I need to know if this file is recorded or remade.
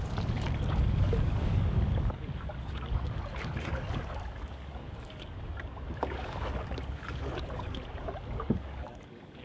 remade